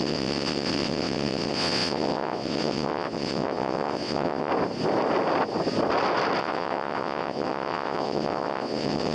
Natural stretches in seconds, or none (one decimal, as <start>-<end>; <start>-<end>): 4.5-6.4

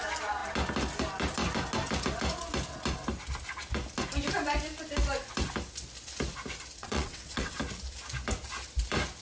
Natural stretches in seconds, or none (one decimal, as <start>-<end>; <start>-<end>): 0.0-6.8; 7.6-9.2